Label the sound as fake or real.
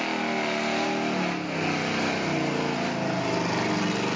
real